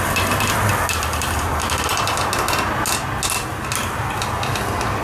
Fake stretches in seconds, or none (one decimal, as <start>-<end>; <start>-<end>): none